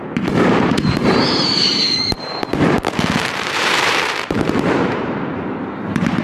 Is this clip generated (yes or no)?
yes